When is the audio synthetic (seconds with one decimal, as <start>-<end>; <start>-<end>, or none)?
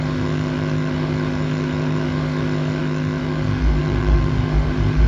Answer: 0.0-5.1